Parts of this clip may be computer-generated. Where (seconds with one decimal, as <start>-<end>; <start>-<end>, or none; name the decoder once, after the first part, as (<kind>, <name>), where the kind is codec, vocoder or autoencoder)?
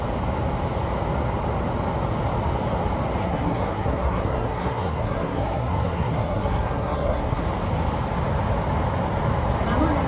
3.2-7.4 (codec, SNAC)